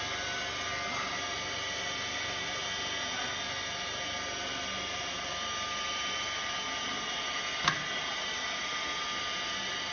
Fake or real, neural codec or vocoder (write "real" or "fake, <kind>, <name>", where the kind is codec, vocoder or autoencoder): real